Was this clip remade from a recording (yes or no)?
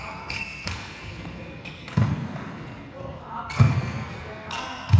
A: yes